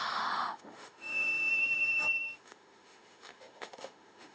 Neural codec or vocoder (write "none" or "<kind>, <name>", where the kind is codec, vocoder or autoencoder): autoencoder, DAC-VAE